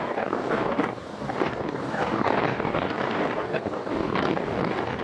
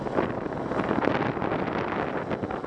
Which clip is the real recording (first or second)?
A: second